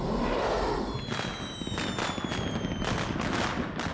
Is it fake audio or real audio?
real